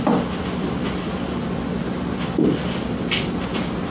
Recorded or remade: recorded